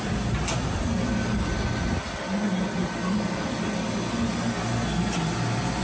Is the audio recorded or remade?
recorded